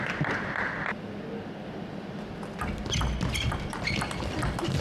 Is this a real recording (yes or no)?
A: yes